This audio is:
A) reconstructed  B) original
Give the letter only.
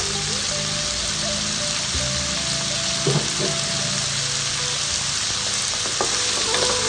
B